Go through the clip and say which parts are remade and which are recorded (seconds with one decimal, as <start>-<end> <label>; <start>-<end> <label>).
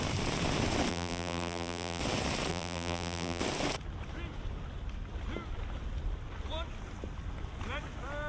0.0-0.9 recorded; 0.9-2.0 remade; 2.0-2.5 recorded; 2.5-3.4 remade; 3.4-8.3 recorded